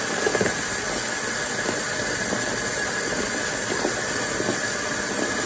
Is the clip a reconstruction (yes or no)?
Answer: no